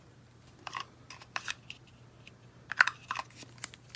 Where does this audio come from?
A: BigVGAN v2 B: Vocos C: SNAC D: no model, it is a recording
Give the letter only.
D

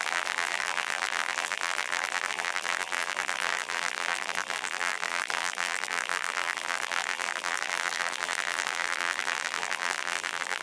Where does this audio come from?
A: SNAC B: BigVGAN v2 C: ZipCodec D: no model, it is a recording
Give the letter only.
B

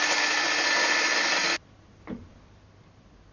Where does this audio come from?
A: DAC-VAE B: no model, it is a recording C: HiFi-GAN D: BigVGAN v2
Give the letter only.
B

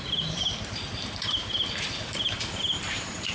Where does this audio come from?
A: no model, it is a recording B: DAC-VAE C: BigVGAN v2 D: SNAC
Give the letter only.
C